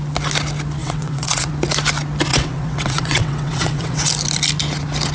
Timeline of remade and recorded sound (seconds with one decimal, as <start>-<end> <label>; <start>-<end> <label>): 0.0-0.8 recorded; 0.8-1.5 remade; 1.5-2.3 recorded; 2.3-4.1 remade; 4.1-5.1 recorded